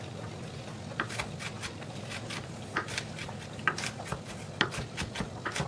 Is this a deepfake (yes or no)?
no